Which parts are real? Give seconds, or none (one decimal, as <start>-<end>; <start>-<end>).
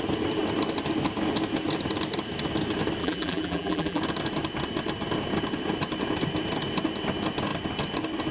0.0-3.0; 4.0-8.3